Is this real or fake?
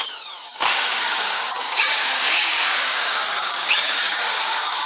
fake